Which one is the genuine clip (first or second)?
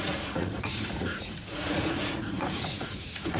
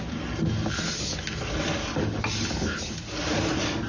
second